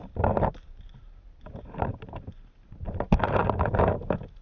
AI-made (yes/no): no